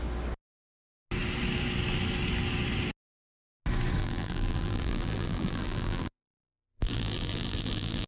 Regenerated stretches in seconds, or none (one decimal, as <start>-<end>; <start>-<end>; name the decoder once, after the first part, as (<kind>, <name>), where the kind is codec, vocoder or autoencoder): 4.0-8.1 (vocoder, BigVGAN v2)

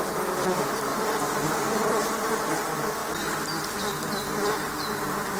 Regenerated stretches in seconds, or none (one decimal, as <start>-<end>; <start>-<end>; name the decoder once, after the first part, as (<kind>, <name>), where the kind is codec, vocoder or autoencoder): 0.9-2.5 (vocoder, BigVGAN v2)

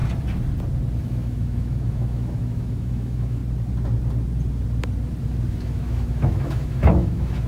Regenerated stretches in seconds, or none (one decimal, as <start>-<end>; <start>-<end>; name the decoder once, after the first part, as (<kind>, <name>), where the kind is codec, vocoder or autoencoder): 1.0-3.4 (autoencoder, DAC-VAE); 5.5-7.5

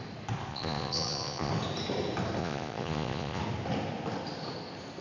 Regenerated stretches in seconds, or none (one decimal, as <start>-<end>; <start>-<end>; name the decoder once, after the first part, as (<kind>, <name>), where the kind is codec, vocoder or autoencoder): 0.5-1.5 (vocoder, Vocos); 2.4-3.4

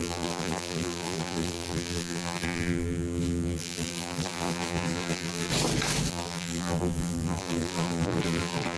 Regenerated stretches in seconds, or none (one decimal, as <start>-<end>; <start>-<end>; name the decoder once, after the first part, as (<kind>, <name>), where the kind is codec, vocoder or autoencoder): 0.0-5.5 (vocoder, BigVGAN v2); 6.1-8.8

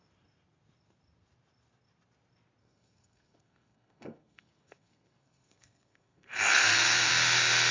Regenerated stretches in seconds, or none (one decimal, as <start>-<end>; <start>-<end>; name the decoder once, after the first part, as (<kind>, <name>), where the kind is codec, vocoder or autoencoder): 2.6-7.1 (codec, SNAC)

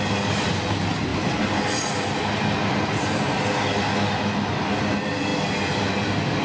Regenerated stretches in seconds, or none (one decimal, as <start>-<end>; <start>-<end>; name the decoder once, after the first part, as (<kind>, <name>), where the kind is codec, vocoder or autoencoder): none

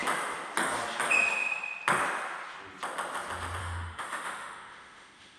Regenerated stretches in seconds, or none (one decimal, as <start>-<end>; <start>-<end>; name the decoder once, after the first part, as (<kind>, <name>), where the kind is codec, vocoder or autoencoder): 3.6-5.4 (autoencoder, DAC-VAE)